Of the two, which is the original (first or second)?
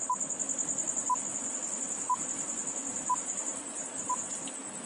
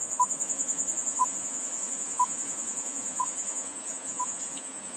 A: first